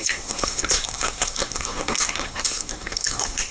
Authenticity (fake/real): fake